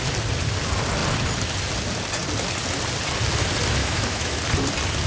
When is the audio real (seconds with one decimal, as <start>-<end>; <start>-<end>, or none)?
0.0-3.8; 4.4-5.1